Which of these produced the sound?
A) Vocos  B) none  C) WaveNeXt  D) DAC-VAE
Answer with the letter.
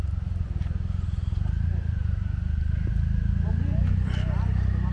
B